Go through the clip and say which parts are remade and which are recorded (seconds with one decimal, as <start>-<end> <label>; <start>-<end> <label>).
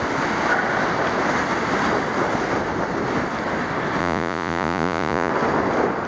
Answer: 0.0-4.0 recorded; 4.0-5.3 remade; 5.3-6.1 recorded